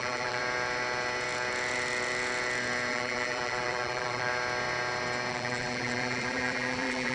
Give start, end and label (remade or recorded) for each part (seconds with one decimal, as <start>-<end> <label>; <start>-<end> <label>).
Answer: 0.0-0.4 remade; 0.4-2.9 recorded; 2.9-4.3 remade; 4.3-5.3 recorded; 5.3-7.1 remade